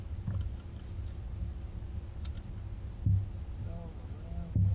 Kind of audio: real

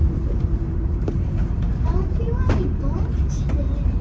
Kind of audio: fake